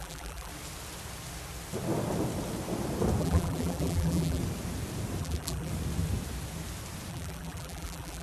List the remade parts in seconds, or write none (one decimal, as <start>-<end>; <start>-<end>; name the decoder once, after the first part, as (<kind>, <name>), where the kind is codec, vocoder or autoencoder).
0.0-0.5 (vocoder, BigVGAN v2); 3.2-4.4; 5.2-5.7; 7.1-8.2